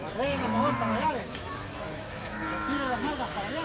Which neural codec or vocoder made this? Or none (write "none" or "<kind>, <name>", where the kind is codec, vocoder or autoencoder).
autoencoder, DAC-VAE